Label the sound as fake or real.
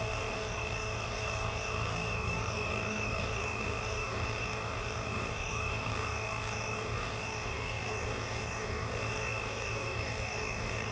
fake